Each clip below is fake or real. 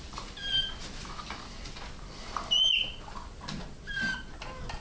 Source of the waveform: real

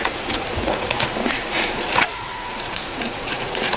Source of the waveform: fake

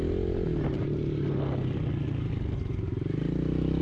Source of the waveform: real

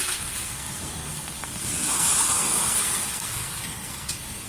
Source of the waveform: fake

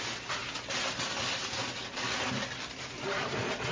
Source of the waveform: real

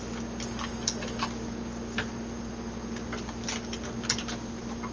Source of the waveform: real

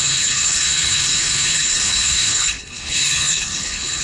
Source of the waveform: fake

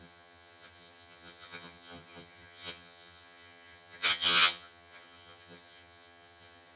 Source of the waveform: fake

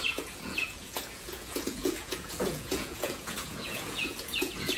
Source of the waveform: fake